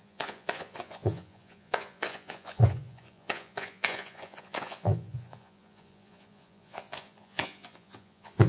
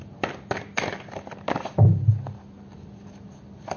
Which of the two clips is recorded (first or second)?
second